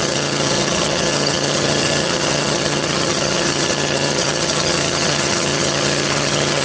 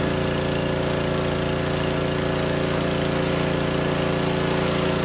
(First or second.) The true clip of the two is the second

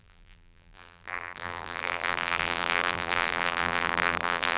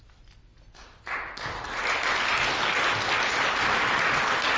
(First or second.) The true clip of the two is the second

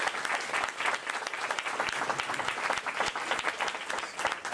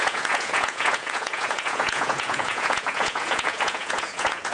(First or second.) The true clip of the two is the first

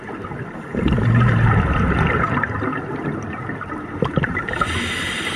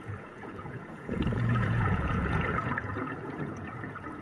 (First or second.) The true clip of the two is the first